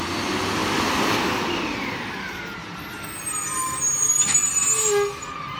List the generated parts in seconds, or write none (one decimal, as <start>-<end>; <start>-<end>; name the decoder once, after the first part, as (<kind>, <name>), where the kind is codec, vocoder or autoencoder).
none